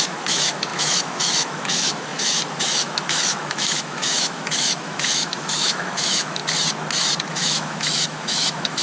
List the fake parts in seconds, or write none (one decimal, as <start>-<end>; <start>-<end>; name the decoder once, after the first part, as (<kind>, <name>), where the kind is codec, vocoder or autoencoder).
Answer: 0.0-6.4 (autoencoder, DAC-VAE); 7.3-8.8